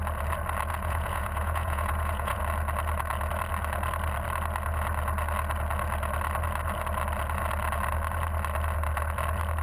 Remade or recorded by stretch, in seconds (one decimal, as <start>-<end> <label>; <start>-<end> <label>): 0.0-0.7 recorded; 0.7-2.4 remade; 2.4-9.6 recorded

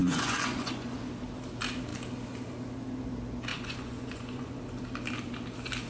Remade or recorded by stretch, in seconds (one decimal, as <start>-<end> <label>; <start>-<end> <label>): 0.0-1.0 remade; 1.0-3.5 recorded; 3.5-4.6 remade; 4.6-5.9 recorded

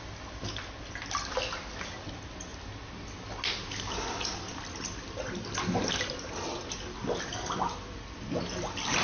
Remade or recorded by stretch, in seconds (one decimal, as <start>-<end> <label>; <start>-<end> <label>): 0.0-9.0 recorded

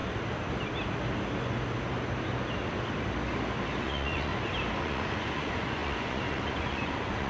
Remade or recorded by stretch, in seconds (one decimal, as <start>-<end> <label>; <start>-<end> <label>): 0.0-3.8 recorded; 3.8-4.3 remade; 4.3-4.8 recorded; 4.8-7.3 remade